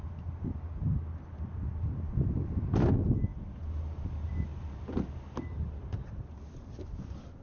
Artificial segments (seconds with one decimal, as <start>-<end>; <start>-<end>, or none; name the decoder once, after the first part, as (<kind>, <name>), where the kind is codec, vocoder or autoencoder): none